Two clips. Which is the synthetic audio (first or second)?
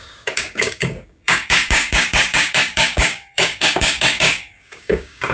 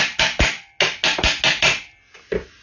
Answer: first